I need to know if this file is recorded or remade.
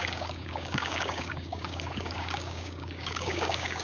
remade